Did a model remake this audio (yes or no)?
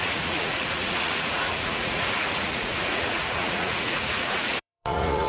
yes